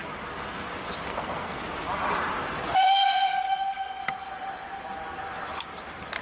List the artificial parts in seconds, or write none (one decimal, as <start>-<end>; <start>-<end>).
1.1-1.6; 3.3-4.0